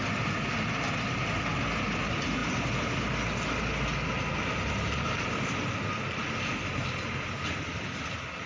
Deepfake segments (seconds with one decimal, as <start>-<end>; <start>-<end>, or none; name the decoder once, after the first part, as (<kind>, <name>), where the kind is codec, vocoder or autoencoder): none